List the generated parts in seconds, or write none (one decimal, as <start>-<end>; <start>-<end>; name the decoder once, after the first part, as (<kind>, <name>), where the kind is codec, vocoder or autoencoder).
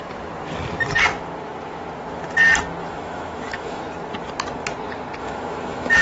2.8-3.8 (autoencoder, DAC-VAE); 5.2-6.0